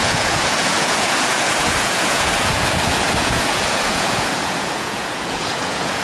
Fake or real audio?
fake